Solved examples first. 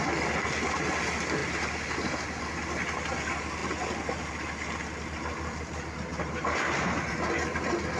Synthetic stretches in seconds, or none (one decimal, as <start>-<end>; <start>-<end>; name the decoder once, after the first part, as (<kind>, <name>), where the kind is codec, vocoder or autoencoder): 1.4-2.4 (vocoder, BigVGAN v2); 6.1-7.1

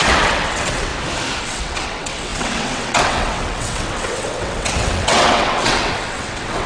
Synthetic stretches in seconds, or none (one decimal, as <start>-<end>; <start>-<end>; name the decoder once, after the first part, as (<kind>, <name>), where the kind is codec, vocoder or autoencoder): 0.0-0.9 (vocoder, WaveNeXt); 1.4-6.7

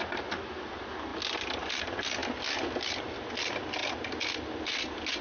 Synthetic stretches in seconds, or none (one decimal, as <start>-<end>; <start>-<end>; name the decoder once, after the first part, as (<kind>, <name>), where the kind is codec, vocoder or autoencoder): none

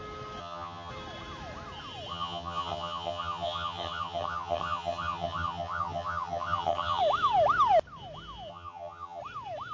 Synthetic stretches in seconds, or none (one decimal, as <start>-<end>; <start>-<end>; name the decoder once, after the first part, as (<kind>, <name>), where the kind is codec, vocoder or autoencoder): 0.4-0.9 (vocoder, HiFi-GAN); 2.1-7.0; 8.5-9.2

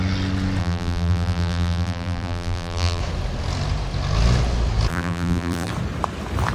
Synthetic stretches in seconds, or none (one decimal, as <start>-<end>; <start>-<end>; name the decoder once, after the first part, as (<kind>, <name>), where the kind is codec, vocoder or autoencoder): 0.6-3.0 (vocoder, BigVGAN v2); 4.9-5.7